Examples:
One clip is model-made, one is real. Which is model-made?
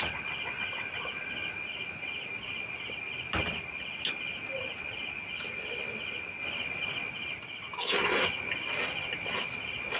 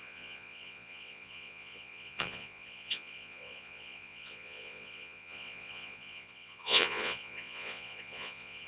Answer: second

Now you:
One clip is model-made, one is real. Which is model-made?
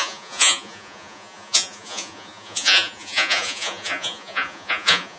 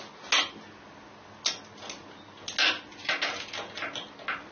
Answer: first